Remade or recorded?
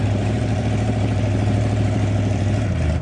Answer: remade